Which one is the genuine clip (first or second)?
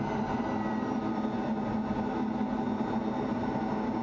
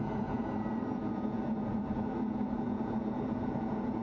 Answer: first